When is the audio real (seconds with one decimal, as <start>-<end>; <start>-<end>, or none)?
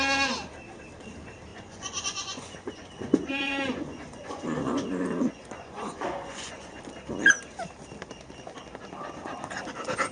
0.0-1.5; 6.8-10.1